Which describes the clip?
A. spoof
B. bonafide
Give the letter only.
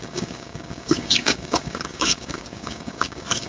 A